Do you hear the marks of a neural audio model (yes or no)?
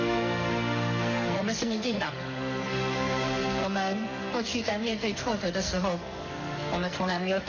yes